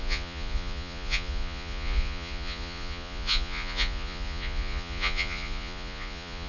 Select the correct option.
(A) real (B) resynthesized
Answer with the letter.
B